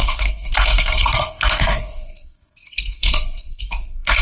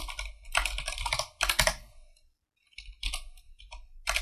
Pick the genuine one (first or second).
second